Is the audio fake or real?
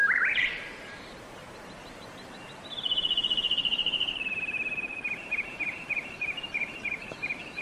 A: fake